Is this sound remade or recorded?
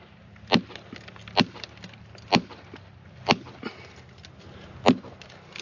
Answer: recorded